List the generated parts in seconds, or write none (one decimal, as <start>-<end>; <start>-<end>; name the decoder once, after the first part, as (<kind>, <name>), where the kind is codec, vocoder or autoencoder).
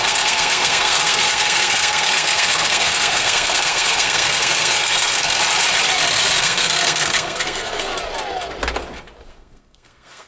0.0-5.4 (codec, SNAC); 6.4-7.9; 9.3-10.3